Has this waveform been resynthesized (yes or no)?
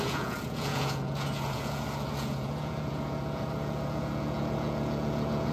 yes